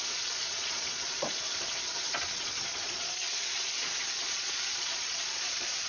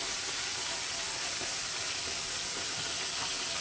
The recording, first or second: second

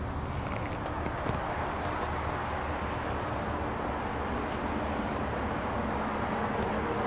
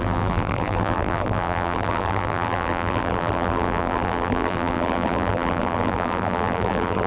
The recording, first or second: first